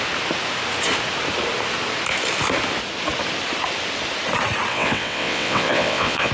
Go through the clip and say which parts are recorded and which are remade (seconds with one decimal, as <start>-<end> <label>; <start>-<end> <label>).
0.0-4.7 recorded; 4.7-6.3 remade